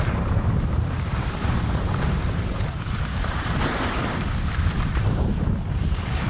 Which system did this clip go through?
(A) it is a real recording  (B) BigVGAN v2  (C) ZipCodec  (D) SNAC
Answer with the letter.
B